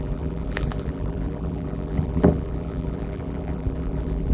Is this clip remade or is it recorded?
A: remade